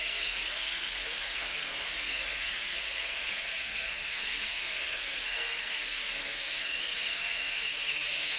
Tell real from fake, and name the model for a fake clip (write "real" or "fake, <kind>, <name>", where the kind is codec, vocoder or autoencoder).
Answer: fake, codec, SNAC